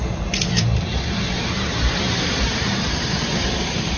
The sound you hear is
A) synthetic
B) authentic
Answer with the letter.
A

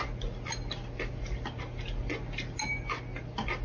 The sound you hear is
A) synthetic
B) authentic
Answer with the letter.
B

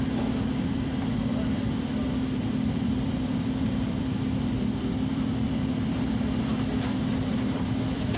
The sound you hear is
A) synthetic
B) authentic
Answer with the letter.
A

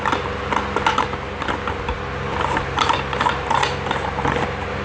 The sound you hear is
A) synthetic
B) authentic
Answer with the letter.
B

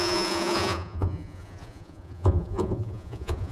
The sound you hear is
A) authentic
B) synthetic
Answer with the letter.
B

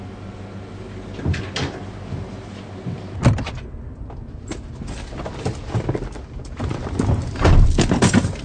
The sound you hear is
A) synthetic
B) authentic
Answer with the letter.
B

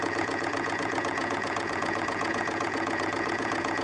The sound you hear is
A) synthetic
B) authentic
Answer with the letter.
A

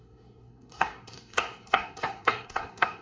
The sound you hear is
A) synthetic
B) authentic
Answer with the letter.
A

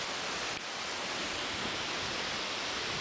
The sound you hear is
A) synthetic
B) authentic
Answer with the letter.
B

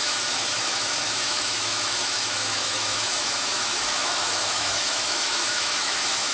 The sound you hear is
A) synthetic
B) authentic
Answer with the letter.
A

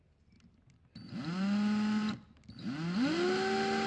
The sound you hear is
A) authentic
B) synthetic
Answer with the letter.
A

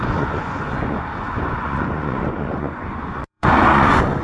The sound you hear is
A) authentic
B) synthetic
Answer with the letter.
B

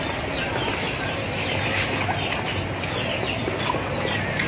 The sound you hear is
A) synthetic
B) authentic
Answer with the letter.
B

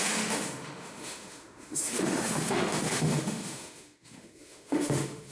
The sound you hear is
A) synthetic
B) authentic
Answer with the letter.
A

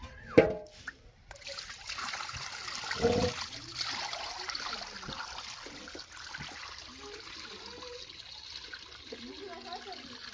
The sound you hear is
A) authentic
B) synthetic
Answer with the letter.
A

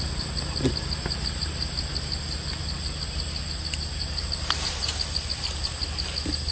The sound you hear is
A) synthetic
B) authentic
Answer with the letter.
B